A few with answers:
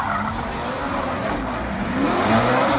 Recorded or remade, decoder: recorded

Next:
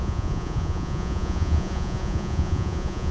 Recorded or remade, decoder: remade, vocoder, Vocos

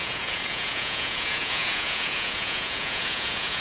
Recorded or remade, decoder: remade, vocoder, Vocos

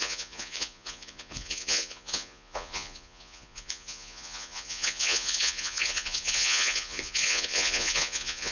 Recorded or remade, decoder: remade, vocoder, Vocos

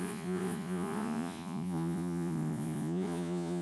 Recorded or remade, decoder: remade, vocoder, Vocos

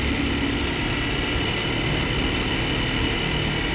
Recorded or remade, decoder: recorded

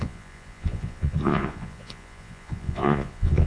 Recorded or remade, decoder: remade, vocoder, Vocos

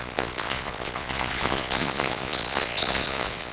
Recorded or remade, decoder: remade, vocoder, Vocos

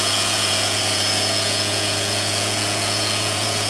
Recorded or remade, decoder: remade, vocoder, Vocos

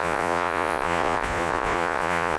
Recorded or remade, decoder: remade, vocoder, Vocos